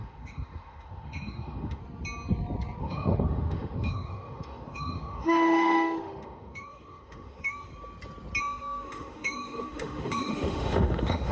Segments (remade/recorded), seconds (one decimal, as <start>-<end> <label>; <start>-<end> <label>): 0.0-1.8 remade; 1.8-2.8 recorded; 2.8-7.7 remade; 7.7-8.4 recorded; 8.4-11.3 remade